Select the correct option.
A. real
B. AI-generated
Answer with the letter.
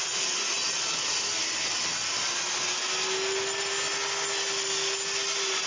A